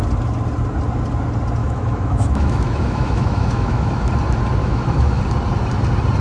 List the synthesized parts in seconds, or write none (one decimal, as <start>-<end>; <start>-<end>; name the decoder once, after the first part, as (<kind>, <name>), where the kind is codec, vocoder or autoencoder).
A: 1.6-4.1 (autoencoder, DAC-VAE); 4.6-5.2